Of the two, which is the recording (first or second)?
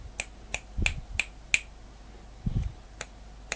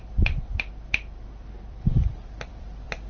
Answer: first